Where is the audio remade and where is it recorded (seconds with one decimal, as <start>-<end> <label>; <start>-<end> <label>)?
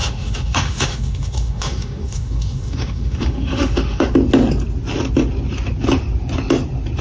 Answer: 0.0-4.1 remade; 4.1-7.0 recorded